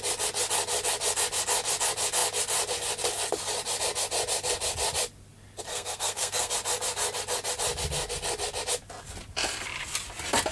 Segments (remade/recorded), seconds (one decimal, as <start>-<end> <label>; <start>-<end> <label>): 0.0-5.7 recorded; 5.7-6.5 remade; 6.5-10.5 recorded